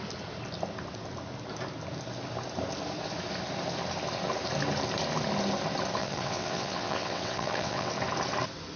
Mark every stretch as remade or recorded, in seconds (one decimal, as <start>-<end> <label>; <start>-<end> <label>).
0.0-6.0 recorded; 6.0-7.9 remade; 7.9-8.8 recorded